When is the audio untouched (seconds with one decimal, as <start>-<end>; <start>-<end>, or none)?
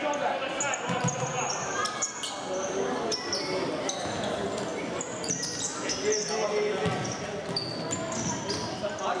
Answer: 0.0-9.2